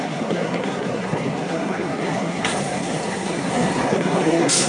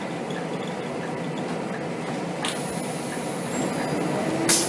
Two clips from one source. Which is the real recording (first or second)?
second